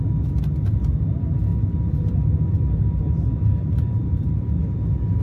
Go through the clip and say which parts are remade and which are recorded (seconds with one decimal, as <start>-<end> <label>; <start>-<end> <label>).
0.0-1.5 recorded; 1.5-4.6 remade; 4.6-5.2 recorded